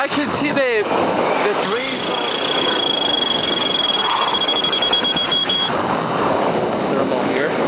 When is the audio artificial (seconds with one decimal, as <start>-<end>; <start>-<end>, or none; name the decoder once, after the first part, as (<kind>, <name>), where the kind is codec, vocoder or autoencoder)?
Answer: 0.0-7.7 (codec, DAC)